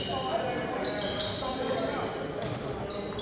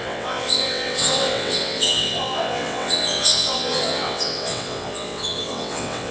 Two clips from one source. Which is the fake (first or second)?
second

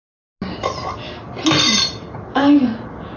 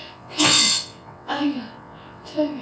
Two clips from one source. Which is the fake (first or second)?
second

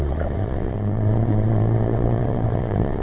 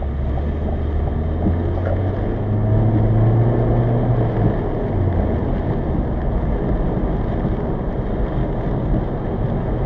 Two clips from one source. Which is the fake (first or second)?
first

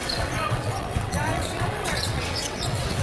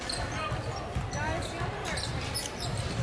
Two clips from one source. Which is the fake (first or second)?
first